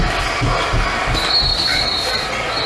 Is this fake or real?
fake